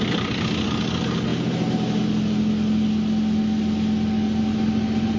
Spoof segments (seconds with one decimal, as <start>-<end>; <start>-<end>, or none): none